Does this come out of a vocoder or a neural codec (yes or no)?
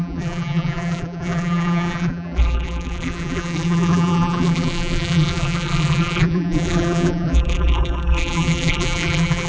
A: yes